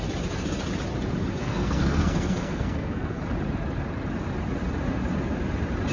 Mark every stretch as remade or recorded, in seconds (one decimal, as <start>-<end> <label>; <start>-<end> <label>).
0.0-1.4 recorded; 1.4-3.2 remade; 3.2-5.9 recorded